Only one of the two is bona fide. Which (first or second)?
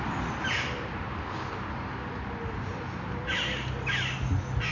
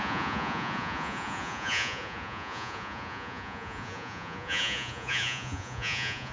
first